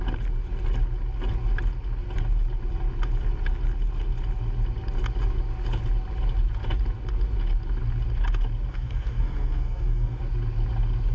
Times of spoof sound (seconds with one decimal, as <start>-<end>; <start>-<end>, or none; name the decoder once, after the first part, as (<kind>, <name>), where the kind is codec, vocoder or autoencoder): 8.7-10.2 (codec, SNAC)